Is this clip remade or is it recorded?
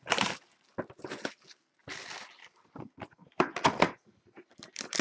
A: remade